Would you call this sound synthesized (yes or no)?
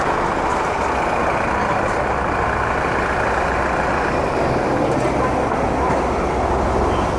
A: no